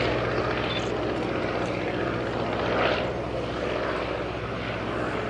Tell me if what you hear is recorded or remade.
recorded